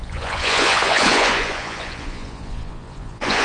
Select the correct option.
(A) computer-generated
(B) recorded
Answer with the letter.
A